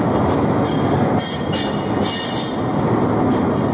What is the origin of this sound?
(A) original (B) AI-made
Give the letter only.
A